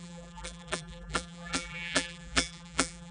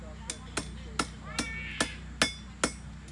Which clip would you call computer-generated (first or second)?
first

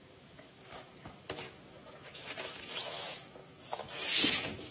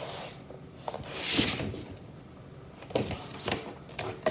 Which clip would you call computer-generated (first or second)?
first